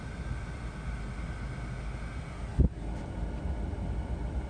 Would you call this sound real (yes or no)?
yes